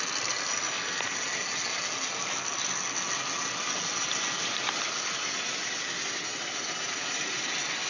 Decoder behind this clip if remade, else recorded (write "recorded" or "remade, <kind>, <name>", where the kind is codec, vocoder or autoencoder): recorded